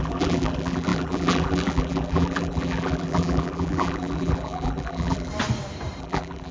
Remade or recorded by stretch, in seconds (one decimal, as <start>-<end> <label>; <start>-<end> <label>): 0.0-5.3 remade; 5.3-6.0 recorded; 6.0-6.5 remade